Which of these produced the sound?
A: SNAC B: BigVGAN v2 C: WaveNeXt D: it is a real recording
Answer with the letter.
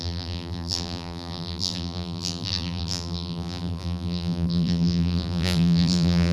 B